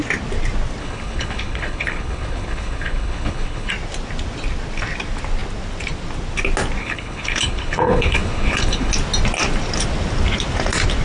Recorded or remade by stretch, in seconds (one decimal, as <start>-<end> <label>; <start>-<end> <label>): 0.0-0.8 recorded; 0.8-3.7 remade; 3.7-6.8 recorded; 6.8-8.9 remade; 8.9-11.0 recorded